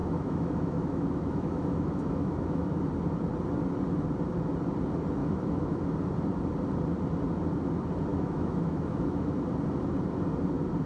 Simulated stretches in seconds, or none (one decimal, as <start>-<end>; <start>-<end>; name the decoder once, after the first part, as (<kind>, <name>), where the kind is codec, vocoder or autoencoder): 0.0-2.8 (autoencoder, DAC-VAE); 5.2-5.8; 8.1-9.3